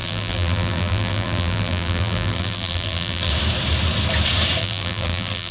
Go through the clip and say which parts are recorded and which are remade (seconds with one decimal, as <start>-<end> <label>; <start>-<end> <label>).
0.0-3.3 remade; 3.3-4.6 recorded; 4.6-5.5 remade